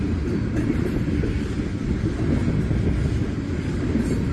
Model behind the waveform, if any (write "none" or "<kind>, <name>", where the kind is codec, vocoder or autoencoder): none